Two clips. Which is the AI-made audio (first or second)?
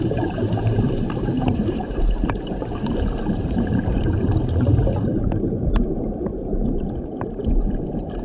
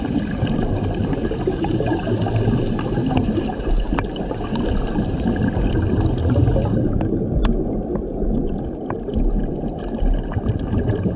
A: first